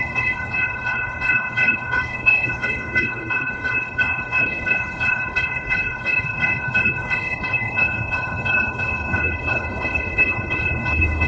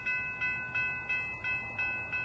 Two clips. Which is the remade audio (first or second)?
first